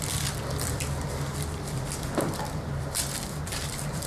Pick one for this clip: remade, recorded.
remade